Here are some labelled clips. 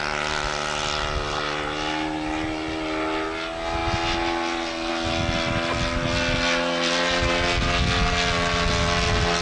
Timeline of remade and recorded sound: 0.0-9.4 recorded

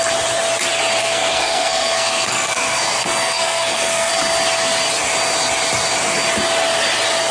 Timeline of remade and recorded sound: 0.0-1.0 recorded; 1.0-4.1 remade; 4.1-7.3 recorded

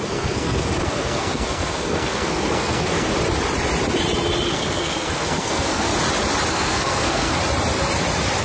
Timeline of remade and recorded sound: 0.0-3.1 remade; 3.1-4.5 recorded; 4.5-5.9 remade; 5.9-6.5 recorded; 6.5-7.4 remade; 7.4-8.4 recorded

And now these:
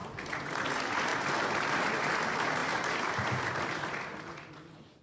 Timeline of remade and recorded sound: 0.0-0.7 remade; 0.7-1.1 recorded; 1.1-1.9 remade; 1.9-2.6 recorded; 2.6-4.5 remade; 4.5-5.0 recorded